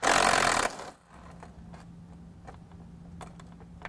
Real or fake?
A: real